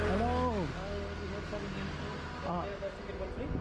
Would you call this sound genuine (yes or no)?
yes